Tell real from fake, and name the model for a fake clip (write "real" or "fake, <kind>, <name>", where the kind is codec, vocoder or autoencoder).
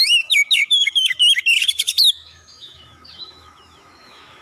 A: fake, autoencoder, DAC-VAE